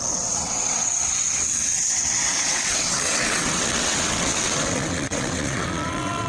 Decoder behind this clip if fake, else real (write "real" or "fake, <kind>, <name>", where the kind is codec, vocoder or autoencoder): fake, vocoder, WaveNeXt